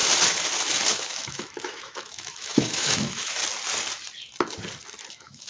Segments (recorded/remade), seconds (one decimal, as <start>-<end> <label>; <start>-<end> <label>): 0.0-0.9 recorded; 0.9-3.4 remade; 3.4-5.1 recorded; 5.1-5.5 remade